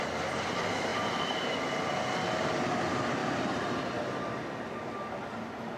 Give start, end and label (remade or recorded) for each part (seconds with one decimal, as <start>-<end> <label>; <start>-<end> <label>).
0.0-3.2 recorded; 3.2-3.8 remade; 3.8-5.8 recorded